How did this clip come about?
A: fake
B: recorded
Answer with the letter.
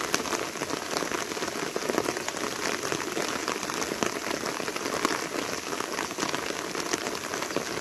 B